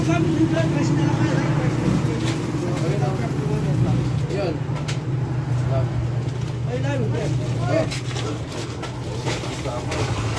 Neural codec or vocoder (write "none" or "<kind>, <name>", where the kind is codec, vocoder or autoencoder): none